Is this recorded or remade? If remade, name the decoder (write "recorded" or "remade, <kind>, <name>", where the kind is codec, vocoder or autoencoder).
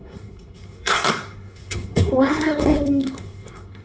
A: remade, codec, SNAC